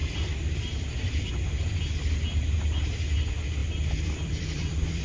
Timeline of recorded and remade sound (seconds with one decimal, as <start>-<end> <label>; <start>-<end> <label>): 0.0-1.3 remade; 1.3-3.6 recorded; 3.6-5.0 remade